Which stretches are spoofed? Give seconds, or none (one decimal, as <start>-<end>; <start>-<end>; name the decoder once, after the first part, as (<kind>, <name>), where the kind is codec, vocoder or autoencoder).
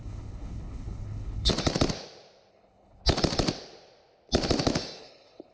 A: 0.0-1.5 (codec, HILCodec); 2.5-3.0; 5.0-5.5